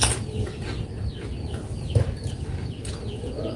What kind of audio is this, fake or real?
real